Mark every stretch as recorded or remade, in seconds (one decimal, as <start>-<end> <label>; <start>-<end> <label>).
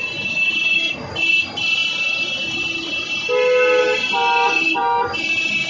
0.0-5.7 recorded